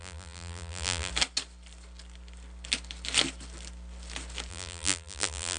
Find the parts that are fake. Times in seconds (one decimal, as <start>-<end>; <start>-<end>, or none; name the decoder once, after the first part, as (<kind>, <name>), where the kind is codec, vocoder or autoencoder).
0.0-1.1 (vocoder, BigVGAN v2); 4.5-5.6